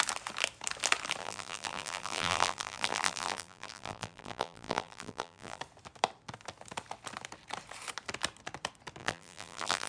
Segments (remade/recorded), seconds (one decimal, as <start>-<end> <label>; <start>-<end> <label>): 0.0-1.2 recorded; 1.2-5.6 remade; 5.6-9.0 recorded; 9.0-9.9 remade